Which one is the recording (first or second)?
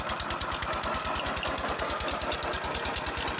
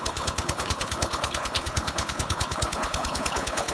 first